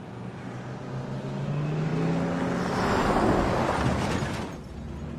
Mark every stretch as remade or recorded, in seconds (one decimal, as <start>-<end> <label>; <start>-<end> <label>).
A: 0.0-5.2 recorded